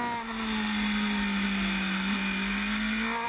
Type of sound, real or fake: real